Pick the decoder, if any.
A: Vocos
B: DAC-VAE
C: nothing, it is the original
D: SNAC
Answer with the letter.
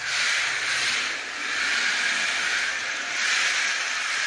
C